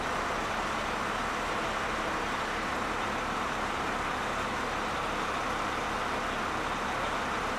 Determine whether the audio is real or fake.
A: real